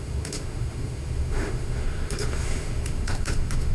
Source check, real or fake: fake